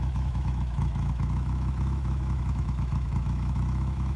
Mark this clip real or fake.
fake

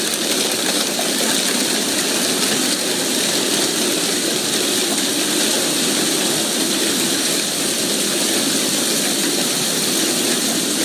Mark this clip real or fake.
real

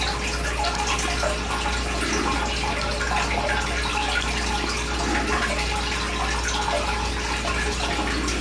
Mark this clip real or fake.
real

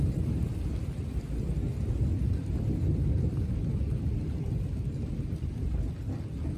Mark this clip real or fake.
real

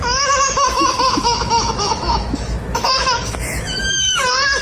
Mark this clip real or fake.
fake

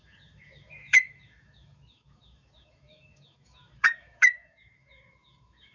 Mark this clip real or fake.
fake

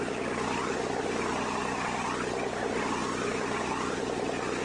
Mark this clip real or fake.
real